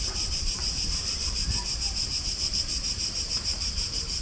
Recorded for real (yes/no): no